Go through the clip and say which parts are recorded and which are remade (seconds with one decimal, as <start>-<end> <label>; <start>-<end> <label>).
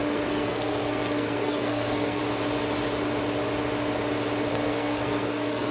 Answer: 0.0-2.2 remade; 2.2-4.5 recorded; 4.5-5.7 remade